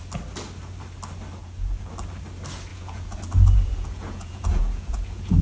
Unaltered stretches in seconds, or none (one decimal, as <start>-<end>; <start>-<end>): 0.0-1.4; 1.9-2.7